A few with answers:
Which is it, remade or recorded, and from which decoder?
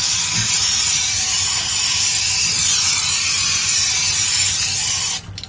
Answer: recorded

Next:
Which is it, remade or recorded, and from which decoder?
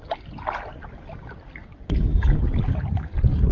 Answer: recorded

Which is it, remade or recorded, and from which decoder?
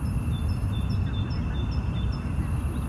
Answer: recorded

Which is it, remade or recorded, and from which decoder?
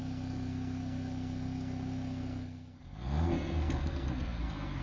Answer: remade, codec, SNAC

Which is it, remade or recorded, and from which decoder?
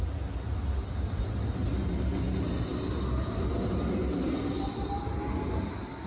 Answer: recorded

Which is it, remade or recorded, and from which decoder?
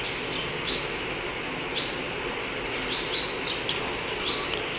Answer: recorded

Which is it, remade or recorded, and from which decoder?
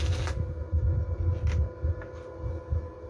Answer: recorded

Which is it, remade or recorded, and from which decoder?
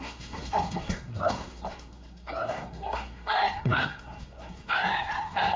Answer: remade, codec, SNAC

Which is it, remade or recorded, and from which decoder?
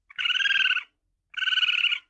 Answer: recorded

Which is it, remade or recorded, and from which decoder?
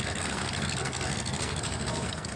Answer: remade, codec, SNAC